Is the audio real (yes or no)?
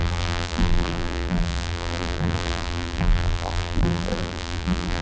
no